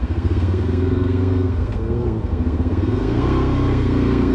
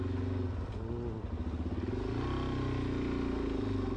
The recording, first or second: second